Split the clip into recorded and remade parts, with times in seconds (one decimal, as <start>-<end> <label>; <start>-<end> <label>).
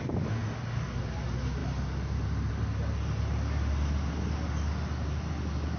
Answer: 0.0-5.8 recorded